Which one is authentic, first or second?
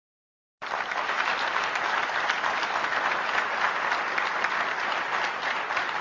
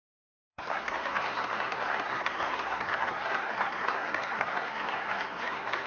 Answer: first